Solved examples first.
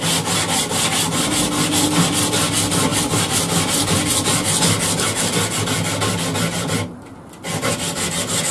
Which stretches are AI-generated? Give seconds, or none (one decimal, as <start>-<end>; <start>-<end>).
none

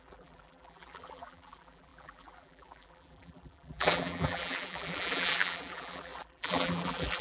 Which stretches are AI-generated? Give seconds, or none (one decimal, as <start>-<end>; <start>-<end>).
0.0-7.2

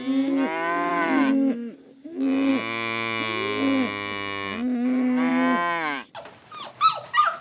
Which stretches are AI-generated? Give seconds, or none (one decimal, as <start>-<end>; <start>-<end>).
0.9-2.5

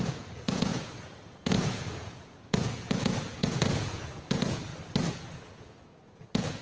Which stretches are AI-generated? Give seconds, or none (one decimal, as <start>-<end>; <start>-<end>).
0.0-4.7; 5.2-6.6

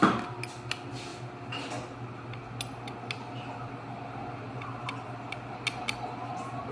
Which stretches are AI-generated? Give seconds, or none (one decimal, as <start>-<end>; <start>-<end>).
none

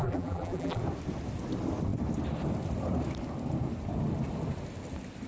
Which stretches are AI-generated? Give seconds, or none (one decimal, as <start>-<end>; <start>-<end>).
0.0-0.8

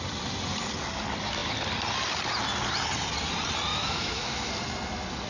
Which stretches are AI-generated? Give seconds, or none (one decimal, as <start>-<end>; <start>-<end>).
3.7-4.5